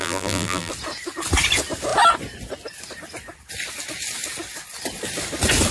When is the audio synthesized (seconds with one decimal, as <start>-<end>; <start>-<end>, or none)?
0.0-0.7